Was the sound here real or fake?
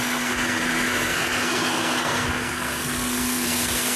fake